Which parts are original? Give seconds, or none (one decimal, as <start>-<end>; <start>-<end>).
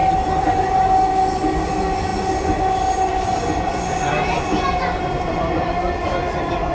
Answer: 0.0-6.7